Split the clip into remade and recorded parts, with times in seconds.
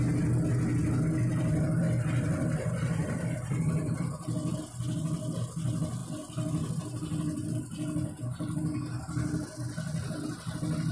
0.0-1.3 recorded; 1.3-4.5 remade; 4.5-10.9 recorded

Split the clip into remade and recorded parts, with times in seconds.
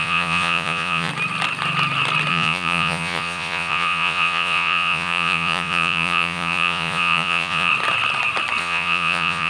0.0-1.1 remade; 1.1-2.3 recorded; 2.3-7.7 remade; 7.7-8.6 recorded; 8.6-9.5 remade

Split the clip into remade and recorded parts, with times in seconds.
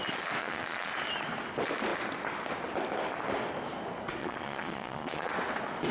0.0-0.4 recorded; 0.4-0.9 remade; 0.9-4.2 recorded; 4.2-5.3 remade; 5.3-5.9 recorded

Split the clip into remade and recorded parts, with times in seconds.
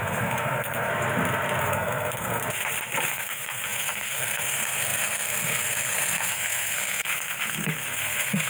0.0-0.9 remade; 0.9-1.6 recorded; 1.6-2.4 remade; 2.4-3.1 recorded; 3.1-8.5 remade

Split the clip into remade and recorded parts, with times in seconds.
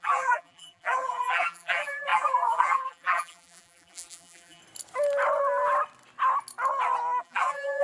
0.0-4.6 remade; 4.6-7.2 recorded; 7.2-7.8 remade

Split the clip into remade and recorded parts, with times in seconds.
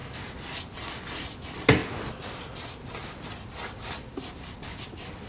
0.0-5.3 recorded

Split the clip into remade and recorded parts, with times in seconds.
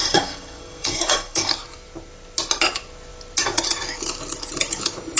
0.0-1.5 remade; 1.5-5.2 recorded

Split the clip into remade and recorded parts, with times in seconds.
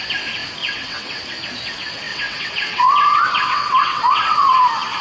0.0-0.6 recorded; 0.6-1.2 remade; 1.2-2.1 recorded; 2.1-4.6 remade; 4.6-5.0 recorded